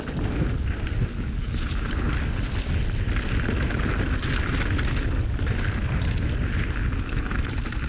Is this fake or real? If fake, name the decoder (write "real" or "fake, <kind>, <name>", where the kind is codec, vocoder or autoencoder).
real